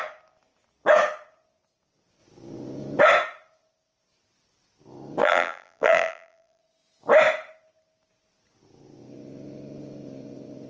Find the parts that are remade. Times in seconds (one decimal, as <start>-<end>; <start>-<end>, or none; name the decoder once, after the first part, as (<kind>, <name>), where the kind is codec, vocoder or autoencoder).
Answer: 5.2-6.6 (vocoder, BigVGAN v2)